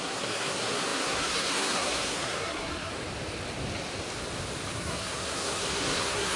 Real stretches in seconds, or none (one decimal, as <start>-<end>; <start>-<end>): 2.9-4.7